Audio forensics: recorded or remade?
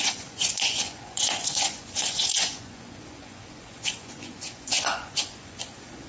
remade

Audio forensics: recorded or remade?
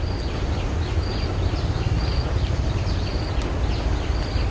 recorded